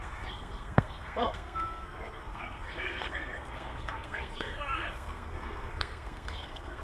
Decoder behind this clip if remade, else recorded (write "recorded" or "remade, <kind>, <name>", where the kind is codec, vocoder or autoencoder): remade, codec, SNAC